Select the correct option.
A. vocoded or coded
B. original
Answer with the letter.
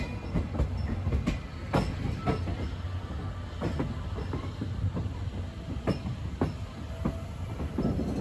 B